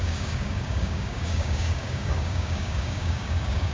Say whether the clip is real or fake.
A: fake